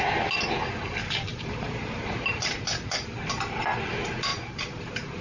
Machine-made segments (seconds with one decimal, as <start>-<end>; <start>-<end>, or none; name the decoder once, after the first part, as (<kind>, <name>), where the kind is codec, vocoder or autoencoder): 1.3-2.5 (vocoder, BigVGAN v2); 4.3-5.2